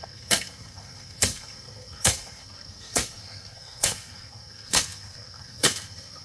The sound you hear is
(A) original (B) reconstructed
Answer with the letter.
B